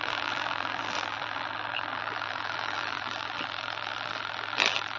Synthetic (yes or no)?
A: yes